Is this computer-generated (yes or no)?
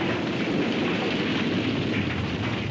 no